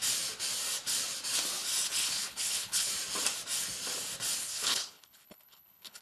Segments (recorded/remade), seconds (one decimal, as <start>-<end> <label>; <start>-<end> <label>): 0.0-1.9 recorded; 1.9-2.9 remade; 2.9-4.4 recorded; 4.4-6.0 remade